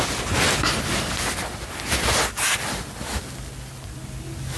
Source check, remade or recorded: recorded